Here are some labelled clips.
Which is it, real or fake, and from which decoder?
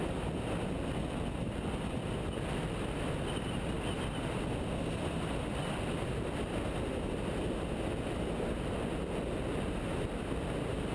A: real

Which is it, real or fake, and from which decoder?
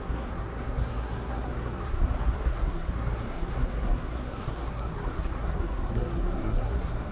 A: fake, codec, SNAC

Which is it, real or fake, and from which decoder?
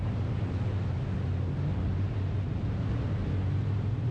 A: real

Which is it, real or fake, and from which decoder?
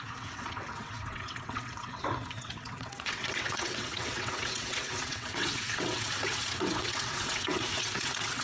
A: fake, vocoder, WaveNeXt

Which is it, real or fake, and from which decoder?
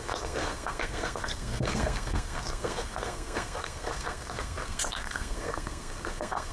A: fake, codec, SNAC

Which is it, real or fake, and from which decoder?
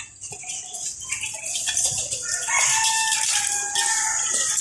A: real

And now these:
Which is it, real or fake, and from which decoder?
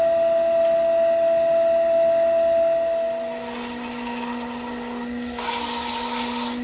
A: real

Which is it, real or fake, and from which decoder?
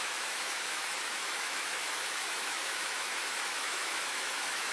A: fake, autoencoder, DAC-VAE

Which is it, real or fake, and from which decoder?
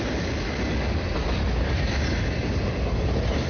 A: real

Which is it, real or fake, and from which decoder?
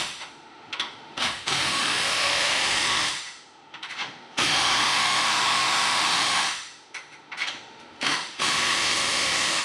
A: fake, autoencoder, DAC-VAE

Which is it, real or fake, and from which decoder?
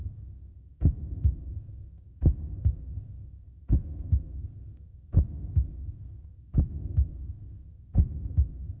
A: fake, codec, SNAC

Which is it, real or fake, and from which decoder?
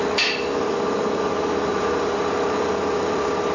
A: fake, vocoder, BigVGAN v2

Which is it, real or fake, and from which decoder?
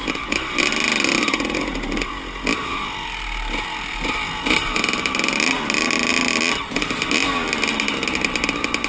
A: real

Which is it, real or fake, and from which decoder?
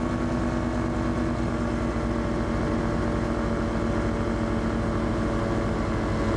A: real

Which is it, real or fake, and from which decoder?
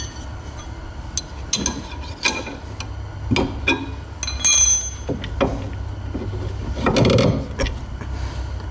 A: real